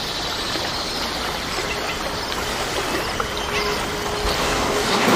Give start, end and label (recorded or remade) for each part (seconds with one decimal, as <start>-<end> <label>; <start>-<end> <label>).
0.0-4.4 recorded; 4.4-5.2 remade